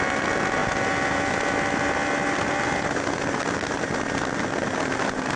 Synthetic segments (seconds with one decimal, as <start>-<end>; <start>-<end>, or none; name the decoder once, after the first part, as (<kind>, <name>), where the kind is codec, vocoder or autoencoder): none

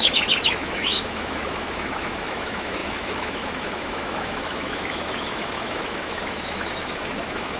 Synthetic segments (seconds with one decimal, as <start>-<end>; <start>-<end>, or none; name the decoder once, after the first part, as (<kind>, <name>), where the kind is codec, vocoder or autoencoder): 0.0-7.6 (autoencoder, DAC-VAE)

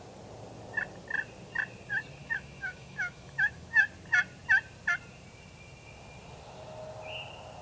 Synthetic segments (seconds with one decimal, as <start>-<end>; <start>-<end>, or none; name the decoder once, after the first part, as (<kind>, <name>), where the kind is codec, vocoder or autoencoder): 2.2-3.7 (autoencoder, DAC-VAE)

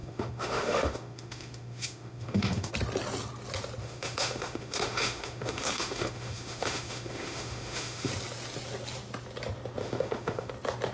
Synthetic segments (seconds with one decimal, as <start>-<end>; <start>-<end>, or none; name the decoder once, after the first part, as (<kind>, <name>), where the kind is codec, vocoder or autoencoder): 0.0-2.7 (autoencoder, DAC-VAE); 3.8-8.1; 9.8-10.5

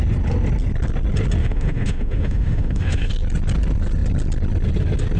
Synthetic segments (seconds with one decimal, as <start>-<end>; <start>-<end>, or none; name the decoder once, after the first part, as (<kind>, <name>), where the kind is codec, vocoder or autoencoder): 1.4-3.1 (autoencoder, DAC-VAE)

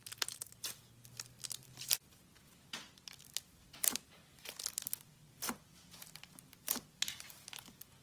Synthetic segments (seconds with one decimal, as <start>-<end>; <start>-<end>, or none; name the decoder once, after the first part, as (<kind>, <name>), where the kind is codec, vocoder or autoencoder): none

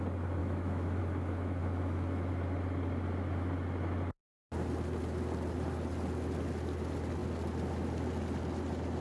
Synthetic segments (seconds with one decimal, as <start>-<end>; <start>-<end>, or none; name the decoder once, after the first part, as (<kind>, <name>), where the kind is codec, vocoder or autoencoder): 0.4-1.0 (autoencoder, DAC-VAE); 1.6-2.3

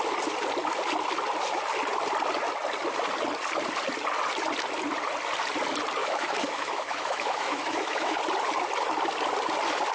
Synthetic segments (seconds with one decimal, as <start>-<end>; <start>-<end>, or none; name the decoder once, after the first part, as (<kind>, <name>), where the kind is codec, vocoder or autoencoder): 6.0-8.2 (autoencoder, DAC-VAE)